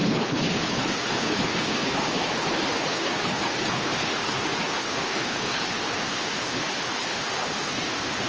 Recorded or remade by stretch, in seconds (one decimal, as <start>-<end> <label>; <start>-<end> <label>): 0.0-8.3 remade